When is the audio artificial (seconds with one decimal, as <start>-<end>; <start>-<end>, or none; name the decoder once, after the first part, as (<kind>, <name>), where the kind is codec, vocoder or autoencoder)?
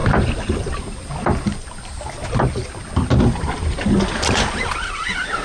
none